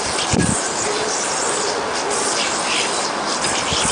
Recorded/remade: recorded